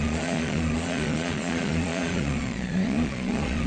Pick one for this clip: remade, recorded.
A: remade